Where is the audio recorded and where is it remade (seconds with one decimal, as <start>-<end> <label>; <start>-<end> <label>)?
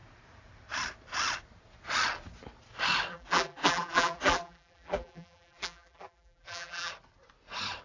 0.0-3.1 recorded; 3.1-6.9 remade; 6.9-7.8 recorded